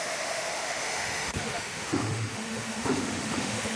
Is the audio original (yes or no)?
no